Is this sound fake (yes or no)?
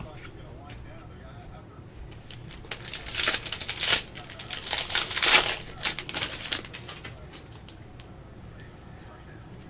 no